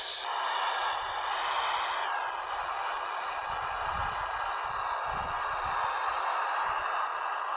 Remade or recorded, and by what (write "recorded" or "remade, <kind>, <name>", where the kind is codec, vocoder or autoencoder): recorded